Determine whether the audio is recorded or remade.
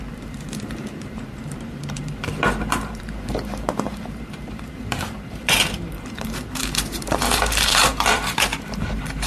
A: remade